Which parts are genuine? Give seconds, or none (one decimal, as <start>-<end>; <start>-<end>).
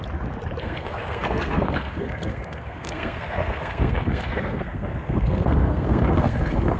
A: 0.0-0.6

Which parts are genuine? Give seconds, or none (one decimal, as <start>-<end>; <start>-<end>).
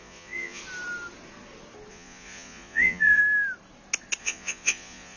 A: 0.6-1.9; 3.2-4.2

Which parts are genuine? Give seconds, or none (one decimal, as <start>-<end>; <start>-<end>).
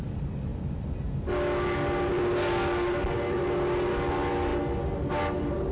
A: 0.0-5.7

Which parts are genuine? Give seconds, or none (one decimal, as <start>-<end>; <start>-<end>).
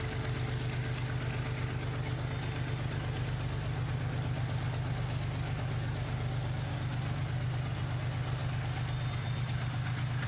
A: 0.0-10.3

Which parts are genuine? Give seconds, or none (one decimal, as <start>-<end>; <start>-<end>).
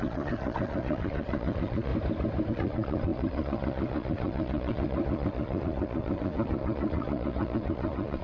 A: 1.9-2.5